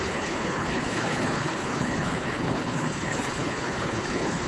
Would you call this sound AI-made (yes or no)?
yes